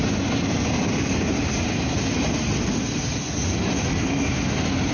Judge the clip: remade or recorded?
recorded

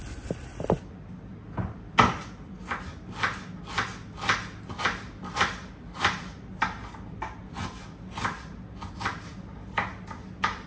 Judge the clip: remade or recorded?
recorded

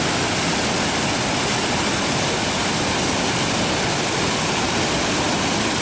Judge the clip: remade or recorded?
recorded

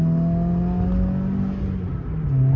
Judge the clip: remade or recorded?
recorded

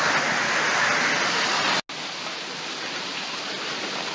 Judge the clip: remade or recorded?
recorded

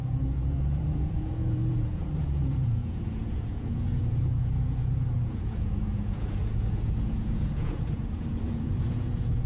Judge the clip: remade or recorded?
remade